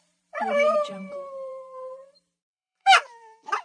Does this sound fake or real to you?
fake